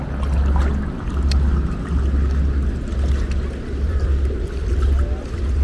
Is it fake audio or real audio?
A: real